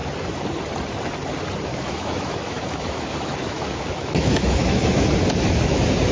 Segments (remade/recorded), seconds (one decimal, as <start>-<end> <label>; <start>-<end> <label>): 0.0-1.7 recorded; 1.7-5.1 remade; 5.1-6.1 recorded